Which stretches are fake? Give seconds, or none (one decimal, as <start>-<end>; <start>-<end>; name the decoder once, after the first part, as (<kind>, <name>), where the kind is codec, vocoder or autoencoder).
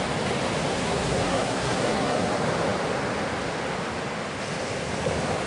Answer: 0.7-2.3 (codec, SNAC)